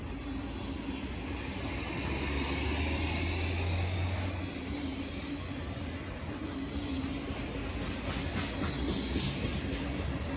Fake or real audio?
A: real